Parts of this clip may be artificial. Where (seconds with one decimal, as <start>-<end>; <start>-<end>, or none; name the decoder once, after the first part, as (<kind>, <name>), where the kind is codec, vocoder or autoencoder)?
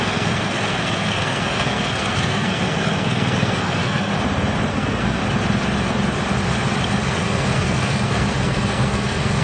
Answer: 0.0-4.1 (codec, SNAC); 4.7-5.2; 7.0-9.4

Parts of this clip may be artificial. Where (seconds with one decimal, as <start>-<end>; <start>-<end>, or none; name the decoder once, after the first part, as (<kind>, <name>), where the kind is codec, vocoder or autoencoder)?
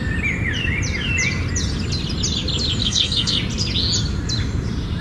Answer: 2.8-3.4 (codec, SNAC)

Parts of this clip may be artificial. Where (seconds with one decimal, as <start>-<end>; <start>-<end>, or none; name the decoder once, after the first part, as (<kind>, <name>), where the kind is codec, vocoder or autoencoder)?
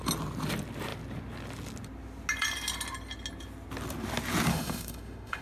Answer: 4.5-5.4 (autoencoder, DAC-VAE)